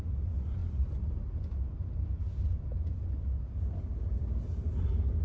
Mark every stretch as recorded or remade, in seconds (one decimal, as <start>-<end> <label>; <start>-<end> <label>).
0.0-5.2 recorded